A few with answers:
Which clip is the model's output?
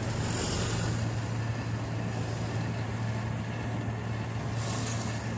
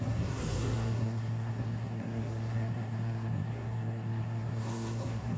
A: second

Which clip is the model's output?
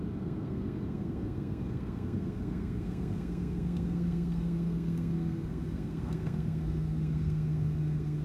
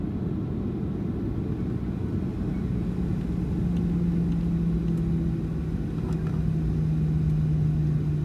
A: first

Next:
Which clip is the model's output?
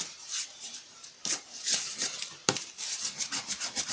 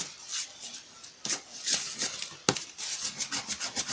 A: first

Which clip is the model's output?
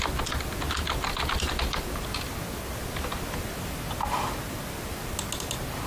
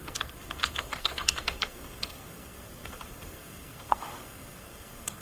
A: second